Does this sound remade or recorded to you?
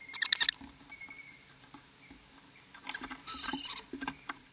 recorded